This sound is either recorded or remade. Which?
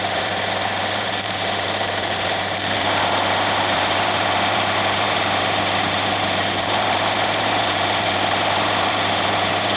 remade